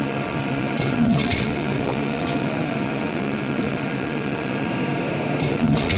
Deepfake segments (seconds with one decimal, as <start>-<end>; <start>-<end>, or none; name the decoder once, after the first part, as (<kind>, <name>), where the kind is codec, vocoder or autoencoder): 0.0-4.7 (vocoder, WaveNeXt); 5.5-6.0